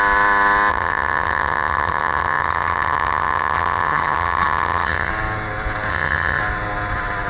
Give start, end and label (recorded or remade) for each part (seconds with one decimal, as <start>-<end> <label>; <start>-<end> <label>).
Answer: 0.0-0.7 recorded; 0.7-5.1 remade; 5.1-5.9 recorded; 5.9-6.4 remade; 6.4-7.3 recorded